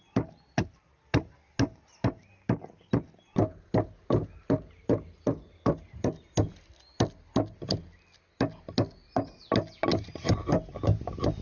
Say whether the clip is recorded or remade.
recorded